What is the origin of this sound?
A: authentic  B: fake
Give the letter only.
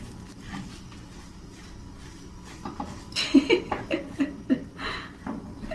A